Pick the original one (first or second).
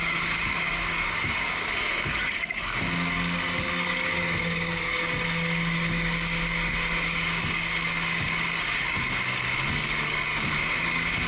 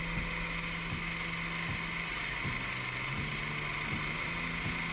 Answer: second